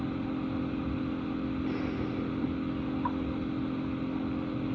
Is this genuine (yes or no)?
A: yes